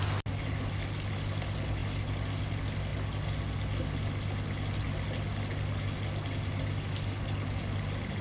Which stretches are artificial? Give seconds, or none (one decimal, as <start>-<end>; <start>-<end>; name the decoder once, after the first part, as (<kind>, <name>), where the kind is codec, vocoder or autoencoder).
none